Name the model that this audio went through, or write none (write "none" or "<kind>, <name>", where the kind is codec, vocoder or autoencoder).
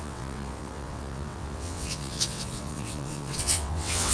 vocoder, WaveNeXt